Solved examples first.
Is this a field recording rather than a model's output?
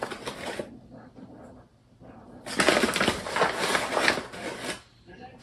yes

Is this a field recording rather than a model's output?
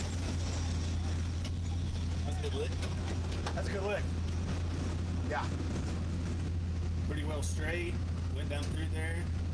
yes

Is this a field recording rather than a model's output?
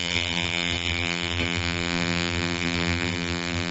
no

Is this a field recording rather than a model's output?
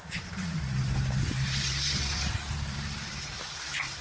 no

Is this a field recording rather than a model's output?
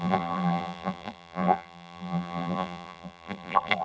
no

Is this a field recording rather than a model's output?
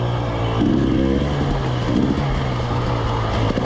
yes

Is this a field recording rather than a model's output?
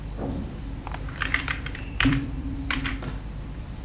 no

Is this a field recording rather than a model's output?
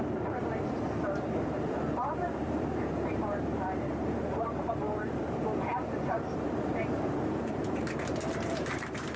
no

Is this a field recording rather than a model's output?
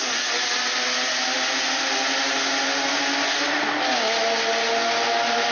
yes